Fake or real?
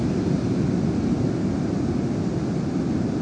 real